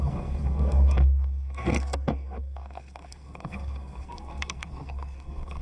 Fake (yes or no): yes